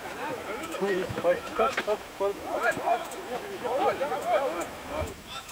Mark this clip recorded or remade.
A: remade